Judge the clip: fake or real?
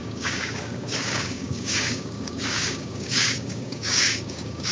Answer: fake